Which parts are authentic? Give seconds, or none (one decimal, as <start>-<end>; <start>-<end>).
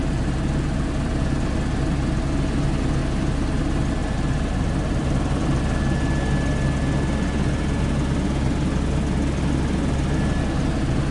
0.0-4.0; 5.6-11.1